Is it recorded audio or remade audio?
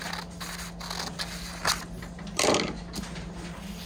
recorded